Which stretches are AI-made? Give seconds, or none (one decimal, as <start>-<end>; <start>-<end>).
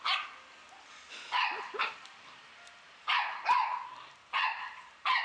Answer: 3.6-5.2